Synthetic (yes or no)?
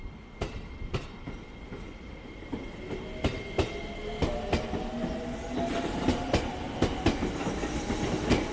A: no